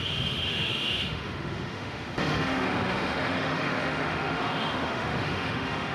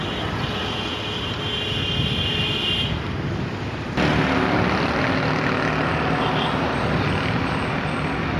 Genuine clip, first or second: second